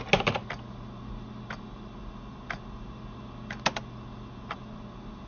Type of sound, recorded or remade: recorded